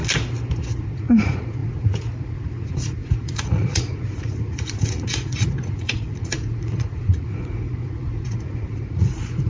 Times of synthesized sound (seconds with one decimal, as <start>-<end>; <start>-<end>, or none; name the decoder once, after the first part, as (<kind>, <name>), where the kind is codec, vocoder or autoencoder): 0.8-9.5 (vocoder, Vocos)